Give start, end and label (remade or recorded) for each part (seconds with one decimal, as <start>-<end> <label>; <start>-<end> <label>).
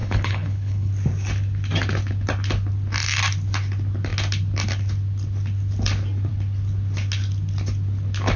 0.0-0.9 remade; 0.9-8.4 recorded